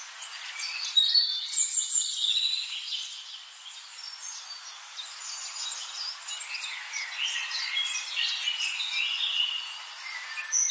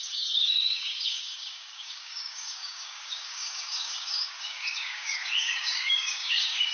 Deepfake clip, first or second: second